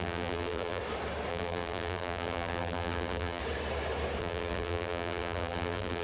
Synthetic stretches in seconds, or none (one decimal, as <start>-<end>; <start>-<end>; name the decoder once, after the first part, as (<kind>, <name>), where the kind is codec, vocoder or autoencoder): 0.0-0.8 (vocoder, BigVGAN v2); 1.3-3.4; 4.2-6.0